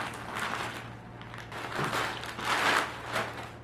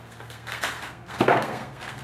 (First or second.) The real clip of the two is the first